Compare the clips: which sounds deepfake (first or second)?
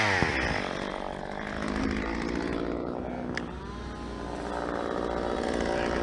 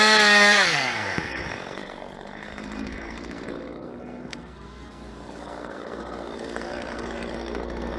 second